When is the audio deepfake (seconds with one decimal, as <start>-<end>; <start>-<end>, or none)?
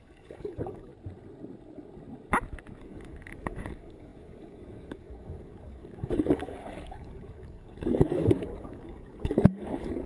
0.0-0.9; 2.8-10.1